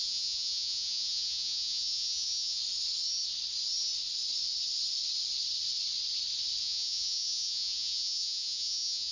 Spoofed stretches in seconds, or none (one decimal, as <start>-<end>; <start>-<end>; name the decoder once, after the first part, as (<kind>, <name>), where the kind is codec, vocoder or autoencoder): 0.0-2.6 (vocoder, Vocos); 6.6-9.1